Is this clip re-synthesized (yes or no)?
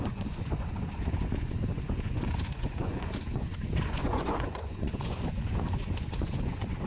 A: yes